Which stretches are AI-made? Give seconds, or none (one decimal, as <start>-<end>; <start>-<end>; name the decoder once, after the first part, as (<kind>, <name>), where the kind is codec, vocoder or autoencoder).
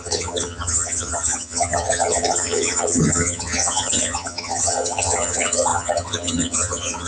0.0-7.1 (vocoder, HiFi-GAN)